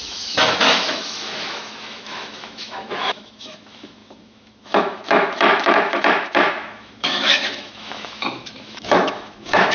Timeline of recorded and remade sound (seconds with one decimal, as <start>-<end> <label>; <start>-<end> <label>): 0.0-9.7 remade